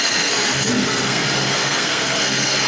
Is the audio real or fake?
fake